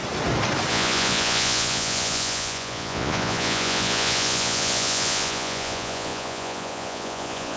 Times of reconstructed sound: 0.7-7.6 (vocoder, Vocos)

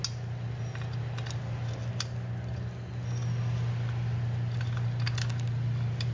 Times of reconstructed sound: none

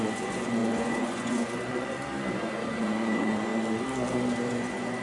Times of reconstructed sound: 0.0-2.0 (vocoder, Vocos); 2.8-3.5; 4.5-5.0

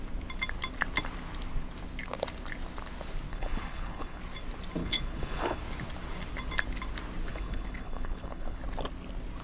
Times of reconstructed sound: 3.3-4.2 (codec, HILCodec); 4.8-5.6; 7.3-8.6

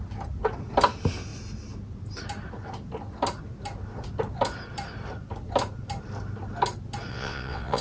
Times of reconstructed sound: 7.1-7.8 (vocoder, WaveNeXt)

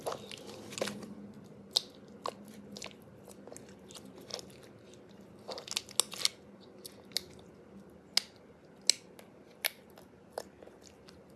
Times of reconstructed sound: none